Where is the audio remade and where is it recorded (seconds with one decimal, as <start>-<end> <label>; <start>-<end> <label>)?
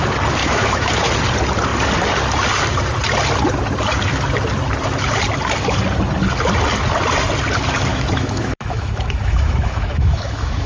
0.0-0.4 recorded; 0.4-1.1 remade; 1.1-7.9 recorded; 7.9-10.7 remade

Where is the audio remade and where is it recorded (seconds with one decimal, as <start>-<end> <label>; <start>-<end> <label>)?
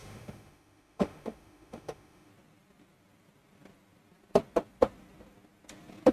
0.0-2.3 remade; 2.3-6.1 recorded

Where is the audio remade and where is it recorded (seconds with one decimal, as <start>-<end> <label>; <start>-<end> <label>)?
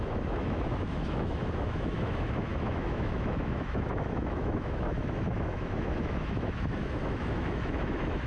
0.0-8.3 remade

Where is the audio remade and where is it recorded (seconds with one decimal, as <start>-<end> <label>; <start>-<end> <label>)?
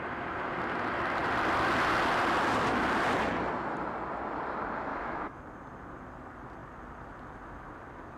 0.0-4.9 recorded; 4.9-5.4 remade; 5.4-8.2 recorded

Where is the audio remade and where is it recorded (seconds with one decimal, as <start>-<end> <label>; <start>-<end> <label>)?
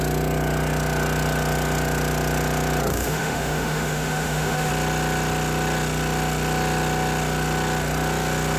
0.0-2.9 recorded; 2.9-4.7 remade; 4.7-8.6 recorded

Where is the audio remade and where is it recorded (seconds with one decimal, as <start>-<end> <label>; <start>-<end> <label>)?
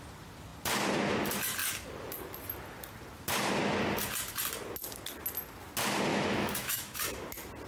0.0-6.1 recorded; 6.1-7.0 remade; 7.0-7.7 recorded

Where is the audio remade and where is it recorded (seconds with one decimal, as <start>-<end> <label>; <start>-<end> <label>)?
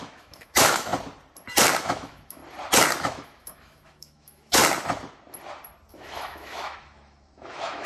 0.0-0.9 remade; 0.9-1.8 recorded; 1.8-2.4 remade; 2.4-3.0 recorded; 3.0-4.6 remade; 4.6-5.9 recorded; 5.9-7.9 remade